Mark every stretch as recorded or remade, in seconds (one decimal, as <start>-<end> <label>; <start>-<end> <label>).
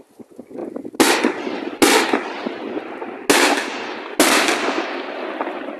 0.0-5.8 recorded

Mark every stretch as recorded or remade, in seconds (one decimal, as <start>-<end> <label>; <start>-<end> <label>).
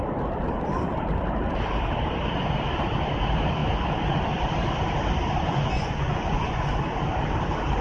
0.0-5.4 recorded; 5.4-6.7 remade; 6.7-7.8 recorded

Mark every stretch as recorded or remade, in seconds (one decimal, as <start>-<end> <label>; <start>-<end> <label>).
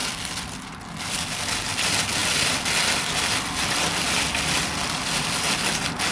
0.0-6.1 recorded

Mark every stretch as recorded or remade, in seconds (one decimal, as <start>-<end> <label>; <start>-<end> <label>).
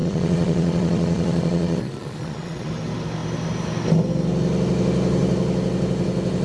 0.0-2.7 remade; 2.7-6.4 recorded